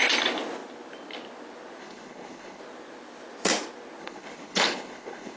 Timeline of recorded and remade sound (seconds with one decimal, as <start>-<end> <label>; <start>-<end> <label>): 0.0-1.8 recorded; 1.8-2.6 remade; 2.6-4.0 recorded; 4.0-5.4 remade